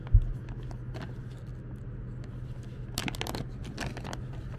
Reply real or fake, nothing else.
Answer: real